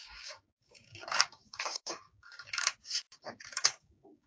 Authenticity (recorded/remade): remade